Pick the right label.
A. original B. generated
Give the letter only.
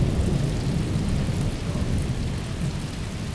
A